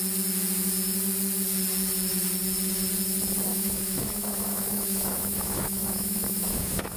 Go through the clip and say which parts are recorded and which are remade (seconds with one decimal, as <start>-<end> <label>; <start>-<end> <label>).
0.0-3.5 recorded; 3.5-7.0 remade